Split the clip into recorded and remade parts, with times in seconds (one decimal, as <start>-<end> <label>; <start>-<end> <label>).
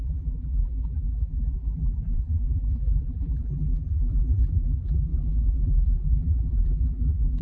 0.0-7.4 remade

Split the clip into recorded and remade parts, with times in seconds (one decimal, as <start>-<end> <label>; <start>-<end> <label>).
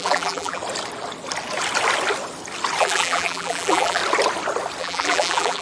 0.0-0.6 remade; 0.6-2.8 recorded; 2.8-4.0 remade; 4.0-4.8 recorded; 4.8-5.6 remade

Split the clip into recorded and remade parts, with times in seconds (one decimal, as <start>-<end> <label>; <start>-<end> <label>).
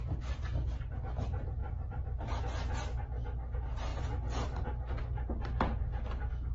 0.0-1.6 recorded; 1.6-2.4 remade; 2.4-6.5 recorded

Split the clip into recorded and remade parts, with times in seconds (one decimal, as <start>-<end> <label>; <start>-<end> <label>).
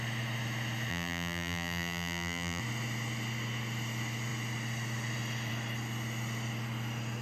0.0-0.9 recorded; 0.9-2.6 remade; 2.6-7.2 recorded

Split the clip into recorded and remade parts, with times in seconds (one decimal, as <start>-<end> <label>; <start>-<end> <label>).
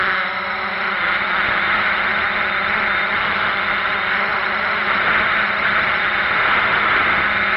0.0-4.3 recorded; 4.3-4.9 remade; 4.9-7.6 recorded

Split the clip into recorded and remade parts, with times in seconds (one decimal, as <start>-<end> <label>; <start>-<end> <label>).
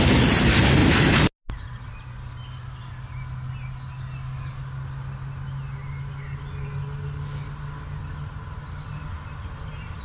0.0-10.0 recorded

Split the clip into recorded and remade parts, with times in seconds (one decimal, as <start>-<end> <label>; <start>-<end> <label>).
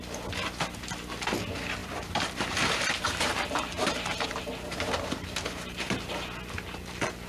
0.0-1.8 recorded; 1.8-6.0 remade; 6.0-7.3 recorded